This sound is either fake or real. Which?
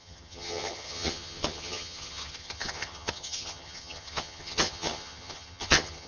fake